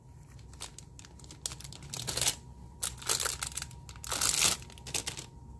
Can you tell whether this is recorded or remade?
recorded